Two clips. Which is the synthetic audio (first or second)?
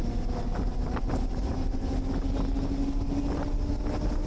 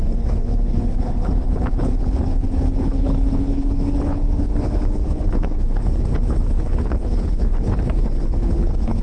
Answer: second